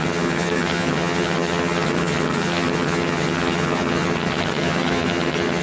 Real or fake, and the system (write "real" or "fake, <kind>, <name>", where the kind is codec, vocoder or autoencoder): fake, vocoder, HiFi-GAN